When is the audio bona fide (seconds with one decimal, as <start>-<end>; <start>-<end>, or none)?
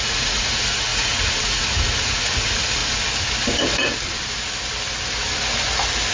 2.8-6.1